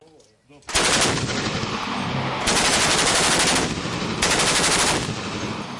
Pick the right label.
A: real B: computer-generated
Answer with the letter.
A